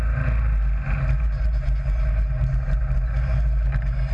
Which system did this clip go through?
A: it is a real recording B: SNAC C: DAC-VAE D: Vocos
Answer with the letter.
A